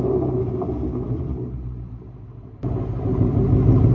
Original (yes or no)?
no